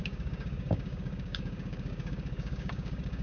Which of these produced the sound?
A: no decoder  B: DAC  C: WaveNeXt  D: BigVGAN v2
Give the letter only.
B